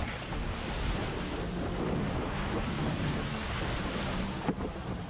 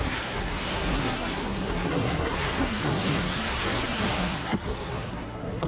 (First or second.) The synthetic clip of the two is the second